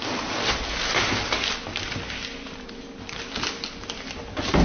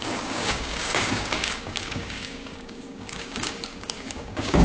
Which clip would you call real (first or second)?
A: first